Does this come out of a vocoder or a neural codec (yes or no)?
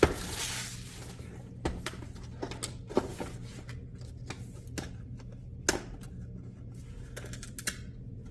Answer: no